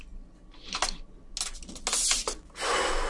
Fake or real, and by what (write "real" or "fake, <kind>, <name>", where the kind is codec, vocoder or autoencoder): real